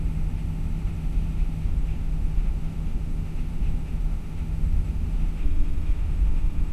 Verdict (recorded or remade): remade